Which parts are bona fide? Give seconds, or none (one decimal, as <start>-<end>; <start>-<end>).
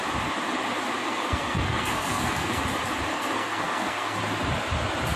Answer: 0.0-1.0; 2.6-3.1; 4.2-5.2